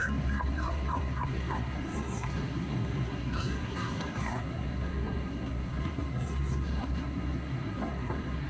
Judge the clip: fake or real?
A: fake